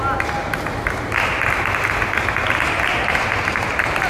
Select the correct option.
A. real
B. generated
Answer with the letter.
A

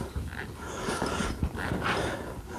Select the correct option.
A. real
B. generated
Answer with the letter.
A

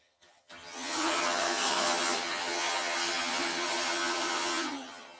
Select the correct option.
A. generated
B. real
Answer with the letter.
A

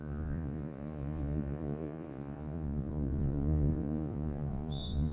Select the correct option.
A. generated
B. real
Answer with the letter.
A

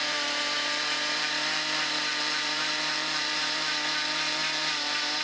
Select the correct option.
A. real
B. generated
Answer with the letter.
B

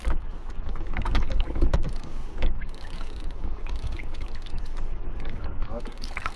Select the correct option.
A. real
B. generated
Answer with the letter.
B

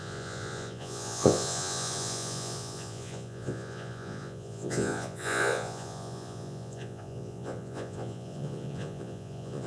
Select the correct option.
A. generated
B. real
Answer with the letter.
A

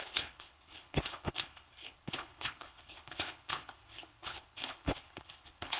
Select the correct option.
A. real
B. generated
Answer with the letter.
B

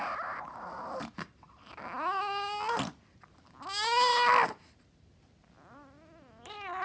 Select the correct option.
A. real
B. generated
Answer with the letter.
A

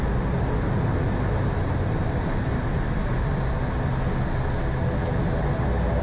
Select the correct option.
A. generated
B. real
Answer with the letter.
B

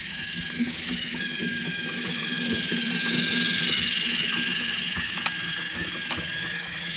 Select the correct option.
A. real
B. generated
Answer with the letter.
B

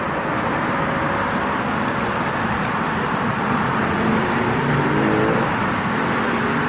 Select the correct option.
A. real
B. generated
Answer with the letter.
B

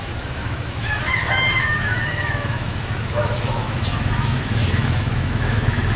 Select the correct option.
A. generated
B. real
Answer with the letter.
A